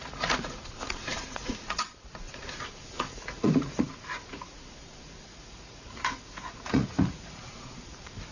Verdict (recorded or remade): remade